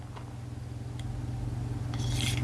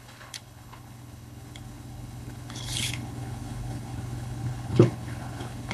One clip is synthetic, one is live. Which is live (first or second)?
first